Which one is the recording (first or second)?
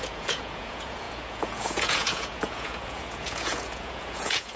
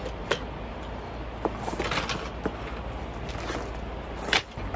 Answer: second